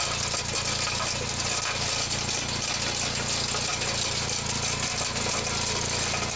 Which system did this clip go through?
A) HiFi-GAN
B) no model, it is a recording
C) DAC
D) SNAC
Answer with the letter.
B